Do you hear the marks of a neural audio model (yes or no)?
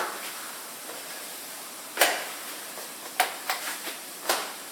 yes